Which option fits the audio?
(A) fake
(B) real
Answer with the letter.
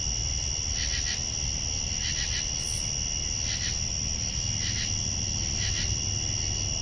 B